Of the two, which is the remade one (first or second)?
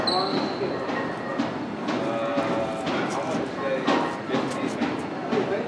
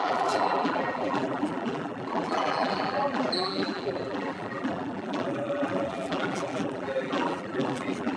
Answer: second